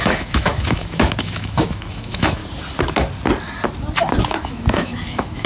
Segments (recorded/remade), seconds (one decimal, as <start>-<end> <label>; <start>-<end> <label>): 0.0-2.4 remade; 2.4-4.2 recorded; 4.2-5.5 remade